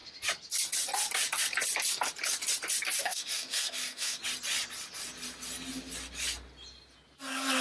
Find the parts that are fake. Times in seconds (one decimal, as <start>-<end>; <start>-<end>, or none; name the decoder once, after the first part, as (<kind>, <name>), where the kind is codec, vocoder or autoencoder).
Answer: 3.0-4.2 (codec, DAC)